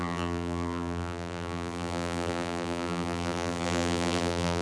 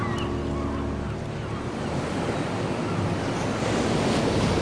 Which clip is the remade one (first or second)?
first